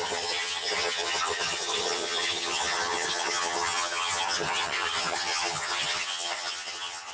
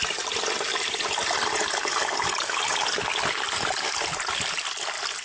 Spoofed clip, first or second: first